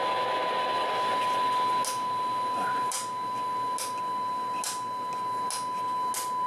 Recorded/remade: recorded